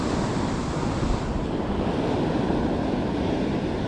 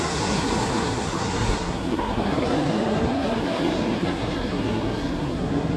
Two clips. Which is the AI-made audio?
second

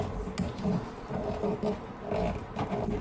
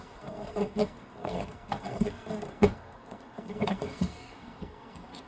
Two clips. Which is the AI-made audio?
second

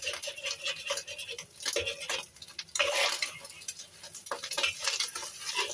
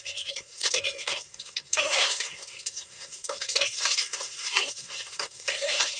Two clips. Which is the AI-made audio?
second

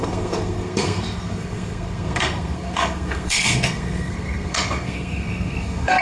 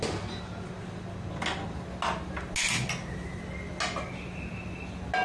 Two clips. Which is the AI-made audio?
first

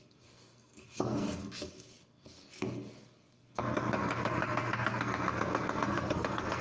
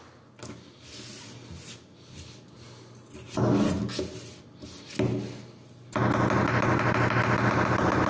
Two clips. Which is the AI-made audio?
first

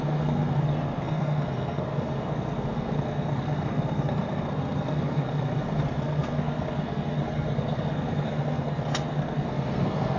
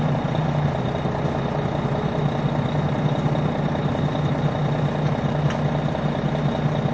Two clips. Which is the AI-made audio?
first